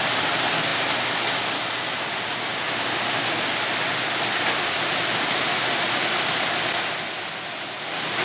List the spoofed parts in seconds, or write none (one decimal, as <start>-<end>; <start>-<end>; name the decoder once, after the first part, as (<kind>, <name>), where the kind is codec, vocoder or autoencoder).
none